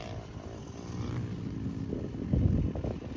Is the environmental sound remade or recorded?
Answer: recorded